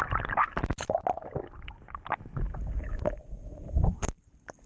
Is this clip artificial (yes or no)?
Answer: no